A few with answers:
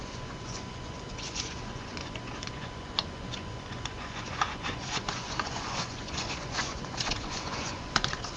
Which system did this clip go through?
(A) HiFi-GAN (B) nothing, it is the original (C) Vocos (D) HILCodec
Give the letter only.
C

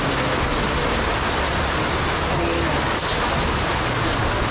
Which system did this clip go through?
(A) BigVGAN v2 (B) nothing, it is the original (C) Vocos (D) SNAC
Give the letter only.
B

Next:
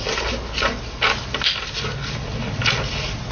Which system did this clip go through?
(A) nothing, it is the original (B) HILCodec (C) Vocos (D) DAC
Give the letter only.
A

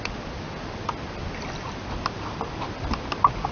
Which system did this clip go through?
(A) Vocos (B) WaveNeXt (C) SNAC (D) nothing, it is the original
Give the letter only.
D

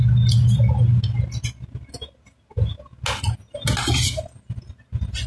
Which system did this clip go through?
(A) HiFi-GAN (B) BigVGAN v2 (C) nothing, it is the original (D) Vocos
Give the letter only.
C